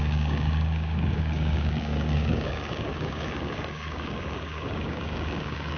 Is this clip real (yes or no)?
no